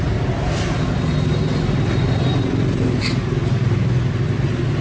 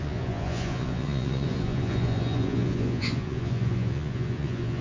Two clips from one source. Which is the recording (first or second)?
first